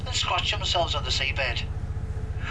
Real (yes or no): yes